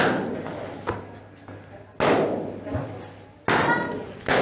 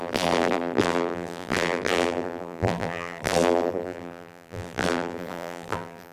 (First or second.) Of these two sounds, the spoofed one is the second